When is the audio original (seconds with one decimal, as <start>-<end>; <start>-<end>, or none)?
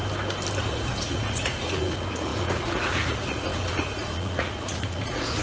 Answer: 0.0-0.6